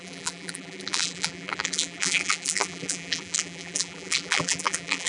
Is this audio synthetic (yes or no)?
yes